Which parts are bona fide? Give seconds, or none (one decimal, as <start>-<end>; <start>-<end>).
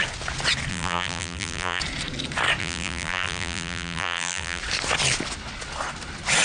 0.0-0.7; 1.8-2.6; 4.6-6.4